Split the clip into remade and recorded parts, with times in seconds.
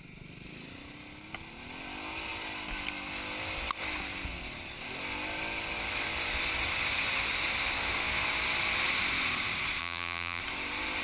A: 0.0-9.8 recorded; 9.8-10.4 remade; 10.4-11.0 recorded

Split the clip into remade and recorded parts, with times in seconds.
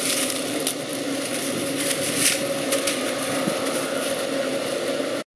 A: 0.0-5.4 recorded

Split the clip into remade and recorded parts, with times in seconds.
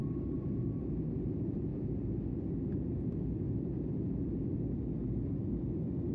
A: 0.0-0.7 remade; 0.7-6.1 recorded